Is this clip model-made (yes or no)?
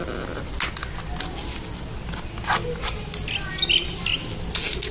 no